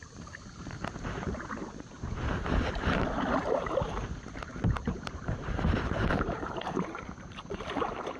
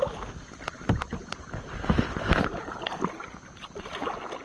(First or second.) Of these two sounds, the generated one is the first